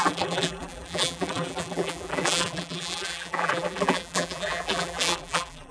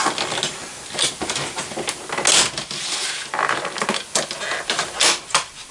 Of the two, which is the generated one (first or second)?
first